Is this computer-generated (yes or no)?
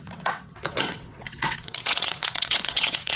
yes